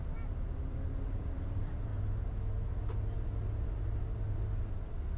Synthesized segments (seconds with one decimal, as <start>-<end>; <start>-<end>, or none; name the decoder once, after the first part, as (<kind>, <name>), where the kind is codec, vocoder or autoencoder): 0.5-1.9 (vocoder, BigVGAN v2)